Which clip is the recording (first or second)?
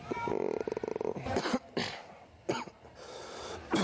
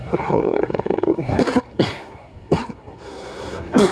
first